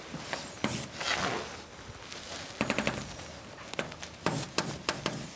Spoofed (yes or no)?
no